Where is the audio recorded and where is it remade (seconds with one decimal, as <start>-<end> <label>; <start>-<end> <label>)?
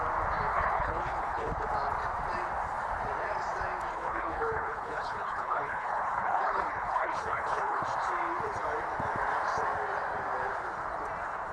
0.0-0.5 recorded; 0.5-1.5 remade; 1.5-3.9 recorded; 3.9-7.8 remade; 7.8-11.5 recorded